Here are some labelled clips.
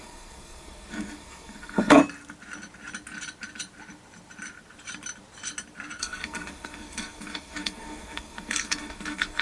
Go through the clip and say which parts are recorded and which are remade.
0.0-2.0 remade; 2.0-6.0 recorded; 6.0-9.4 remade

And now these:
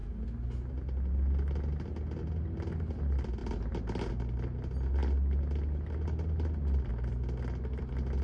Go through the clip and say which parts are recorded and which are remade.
0.0-8.2 recorded

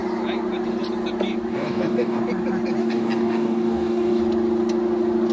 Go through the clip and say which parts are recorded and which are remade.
0.0-1.5 recorded; 1.5-2.2 remade; 2.2-2.8 recorded; 2.8-4.2 remade; 4.2-5.3 recorded

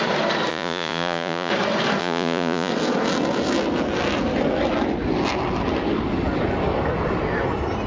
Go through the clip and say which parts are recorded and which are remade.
0.0-0.5 recorded; 0.5-1.5 remade; 1.5-2.0 recorded; 2.0-2.7 remade; 2.7-7.9 recorded

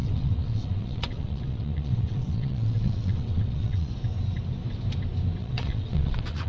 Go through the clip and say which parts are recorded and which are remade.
0.0-3.9 remade; 3.9-5.4 recorded; 5.4-6.5 remade